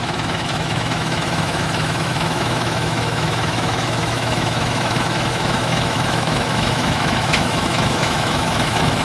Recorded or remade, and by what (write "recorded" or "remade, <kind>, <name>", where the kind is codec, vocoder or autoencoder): remade, autoencoder, DAC-VAE